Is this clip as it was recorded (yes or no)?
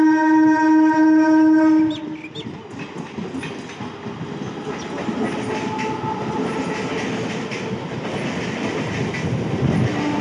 yes